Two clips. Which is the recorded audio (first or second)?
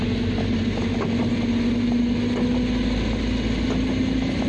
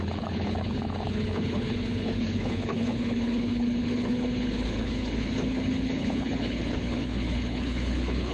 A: first